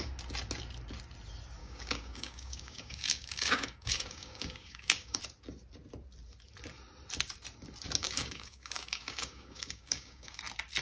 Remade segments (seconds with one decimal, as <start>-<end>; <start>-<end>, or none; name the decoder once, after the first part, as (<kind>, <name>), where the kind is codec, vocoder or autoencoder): 1.6-5.2 (codec, DAC); 8.0-10.4